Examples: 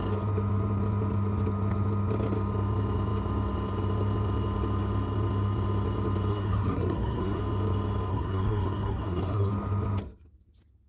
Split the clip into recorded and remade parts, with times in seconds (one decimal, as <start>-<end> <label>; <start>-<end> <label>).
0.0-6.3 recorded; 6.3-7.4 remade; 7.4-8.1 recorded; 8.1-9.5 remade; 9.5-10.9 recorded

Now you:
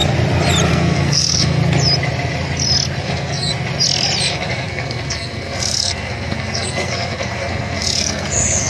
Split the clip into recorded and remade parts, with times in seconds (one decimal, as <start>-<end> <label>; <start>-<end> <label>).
0.0-0.7 recorded; 0.7-1.6 remade; 1.6-3.0 recorded; 3.0-3.5 remade; 3.5-4.3 recorded; 4.3-8.7 remade

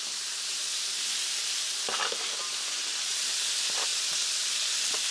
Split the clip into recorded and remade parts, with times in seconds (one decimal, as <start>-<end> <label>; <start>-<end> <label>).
0.0-5.1 recorded

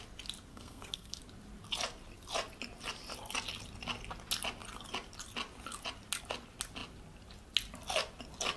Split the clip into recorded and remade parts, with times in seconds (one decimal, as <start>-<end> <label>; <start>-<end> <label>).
0.0-0.5 recorded; 0.5-1.2 remade; 1.2-8.6 recorded

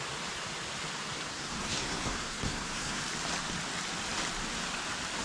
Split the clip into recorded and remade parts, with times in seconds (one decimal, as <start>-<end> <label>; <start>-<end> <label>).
0.0-1.3 recorded; 1.3-3.0 remade; 3.0-5.2 recorded